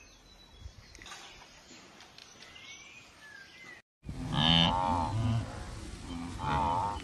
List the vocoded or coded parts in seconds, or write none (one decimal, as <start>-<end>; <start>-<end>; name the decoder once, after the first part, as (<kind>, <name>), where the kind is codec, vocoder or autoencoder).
none